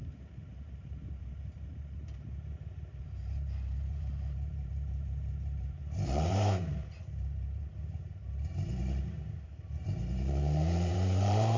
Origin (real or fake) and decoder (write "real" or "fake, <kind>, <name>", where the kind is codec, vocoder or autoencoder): fake, vocoder, BigVGAN v2